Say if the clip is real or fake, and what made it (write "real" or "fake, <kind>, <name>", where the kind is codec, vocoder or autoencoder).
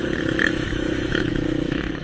fake, autoencoder, DAC-VAE